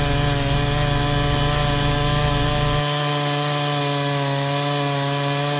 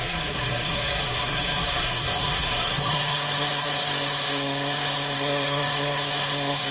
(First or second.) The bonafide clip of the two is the first